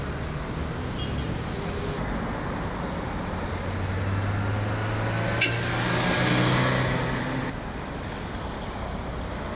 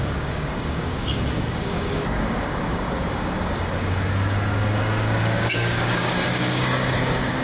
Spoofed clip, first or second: second